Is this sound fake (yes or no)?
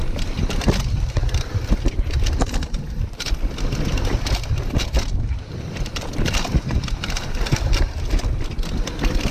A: no